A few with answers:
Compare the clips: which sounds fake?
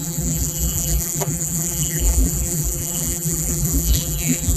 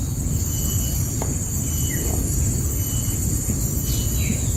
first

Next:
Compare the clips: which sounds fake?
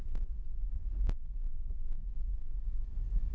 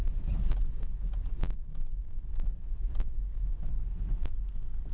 first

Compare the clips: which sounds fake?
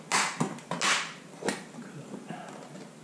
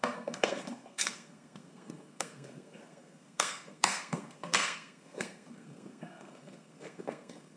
second